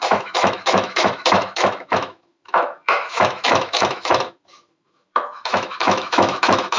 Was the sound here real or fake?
fake